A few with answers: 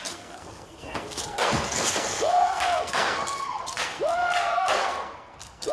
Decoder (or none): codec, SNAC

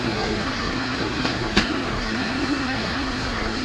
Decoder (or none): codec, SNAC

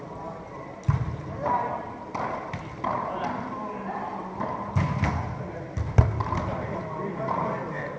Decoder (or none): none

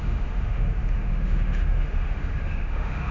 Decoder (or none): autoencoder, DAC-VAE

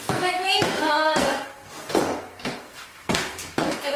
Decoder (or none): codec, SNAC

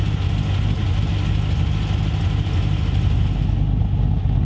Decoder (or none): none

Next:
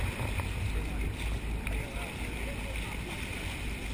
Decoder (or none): none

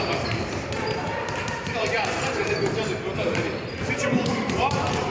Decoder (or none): vocoder, BigVGAN v2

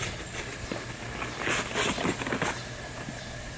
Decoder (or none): none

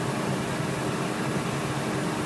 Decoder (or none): none